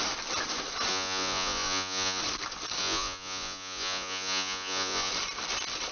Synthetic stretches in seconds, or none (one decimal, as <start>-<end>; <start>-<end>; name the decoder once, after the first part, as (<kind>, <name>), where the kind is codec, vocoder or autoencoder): 0.9-2.2 (vocoder, Vocos); 2.8-5.1